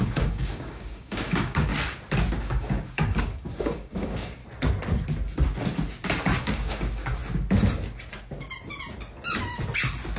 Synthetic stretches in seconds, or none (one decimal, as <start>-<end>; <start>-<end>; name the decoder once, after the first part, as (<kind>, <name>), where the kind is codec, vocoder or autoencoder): 0.0-1.7 (codec, DAC); 2.3-4.4; 6.4-7.2